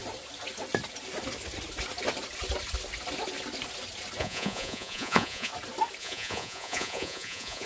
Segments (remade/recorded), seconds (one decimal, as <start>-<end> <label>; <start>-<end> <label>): 0.0-4.2 recorded; 4.2-5.5 remade; 5.5-6.0 recorded; 6.0-7.7 remade